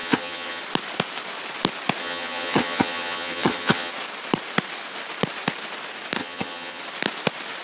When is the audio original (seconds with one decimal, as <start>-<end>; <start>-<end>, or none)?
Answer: 0.6-2.0; 3.9-6.2; 6.8-7.6